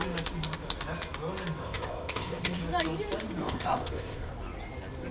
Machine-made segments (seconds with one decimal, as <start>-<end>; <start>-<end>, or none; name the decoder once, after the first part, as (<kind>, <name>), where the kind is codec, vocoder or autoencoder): 1.6-2.6 (codec, ZipCodec); 3.4-4.3